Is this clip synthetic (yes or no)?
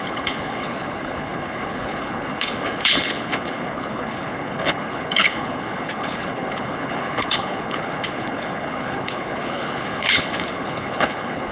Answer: yes